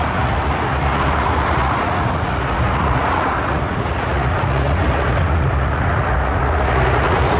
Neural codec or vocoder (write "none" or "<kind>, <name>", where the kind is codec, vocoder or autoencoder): vocoder, Vocos